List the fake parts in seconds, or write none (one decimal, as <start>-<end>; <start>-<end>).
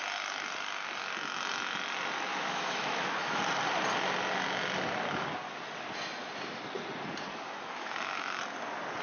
2.3-3.4; 7.3-8.4